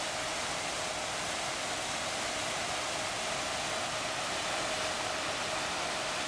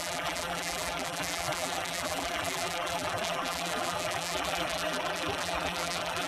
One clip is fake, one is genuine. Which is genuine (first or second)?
first